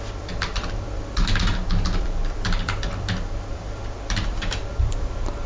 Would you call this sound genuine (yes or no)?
no